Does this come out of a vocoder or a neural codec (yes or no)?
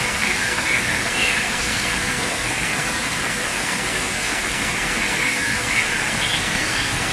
yes